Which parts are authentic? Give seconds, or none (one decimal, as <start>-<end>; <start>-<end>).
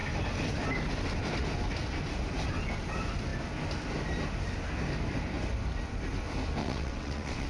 0.0-6.6